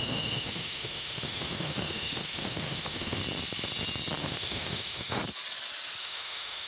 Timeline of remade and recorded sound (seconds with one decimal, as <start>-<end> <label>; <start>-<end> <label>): 0.0-3.2 remade; 3.2-4.2 recorded; 4.2-5.2 remade; 5.2-6.0 recorded; 6.0-6.7 remade